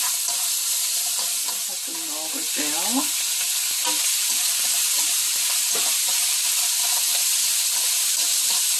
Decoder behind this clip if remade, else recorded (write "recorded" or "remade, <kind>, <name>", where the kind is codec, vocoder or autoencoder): recorded